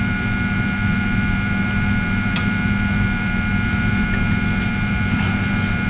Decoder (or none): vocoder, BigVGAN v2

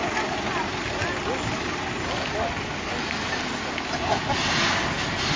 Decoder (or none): none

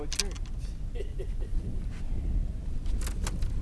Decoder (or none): none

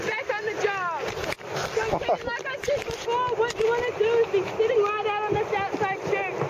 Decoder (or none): none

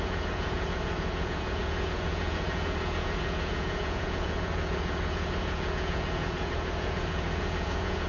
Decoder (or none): vocoder, Vocos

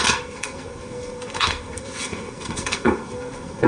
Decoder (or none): codec, SNAC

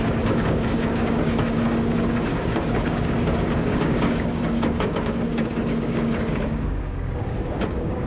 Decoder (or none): codec, DAC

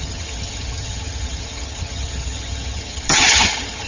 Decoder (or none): vocoder, HiFi-GAN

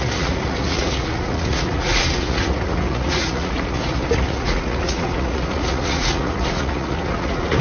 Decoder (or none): vocoder, Vocos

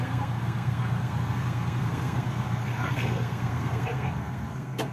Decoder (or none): codec, SNAC